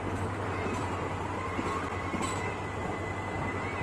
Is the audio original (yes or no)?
yes